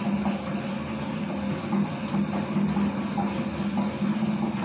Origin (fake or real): real